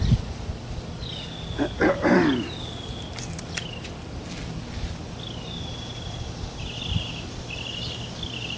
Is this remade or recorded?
recorded